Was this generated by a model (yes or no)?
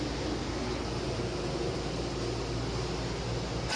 no